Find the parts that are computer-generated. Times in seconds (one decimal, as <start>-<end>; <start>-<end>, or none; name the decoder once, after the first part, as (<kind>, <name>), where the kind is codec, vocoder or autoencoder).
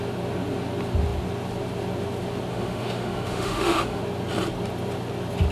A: 2.5-4.0 (autoencoder, DAC-VAE)